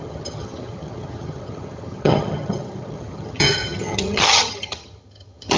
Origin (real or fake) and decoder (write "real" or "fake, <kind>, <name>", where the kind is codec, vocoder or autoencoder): fake, vocoder, HiFi-GAN